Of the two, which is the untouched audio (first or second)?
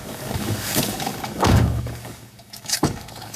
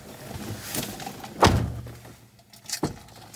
second